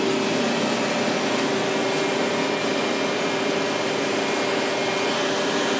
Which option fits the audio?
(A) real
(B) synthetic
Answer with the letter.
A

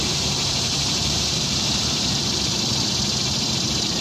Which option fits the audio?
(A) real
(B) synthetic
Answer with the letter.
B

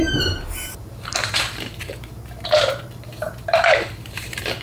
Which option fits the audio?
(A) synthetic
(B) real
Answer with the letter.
A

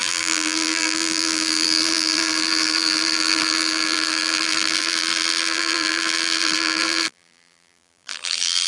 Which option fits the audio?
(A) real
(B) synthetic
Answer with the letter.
B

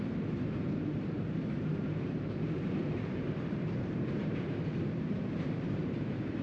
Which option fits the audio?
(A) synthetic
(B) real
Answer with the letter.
A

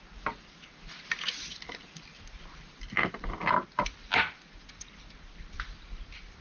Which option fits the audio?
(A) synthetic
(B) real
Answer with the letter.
B